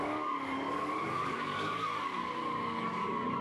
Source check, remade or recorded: remade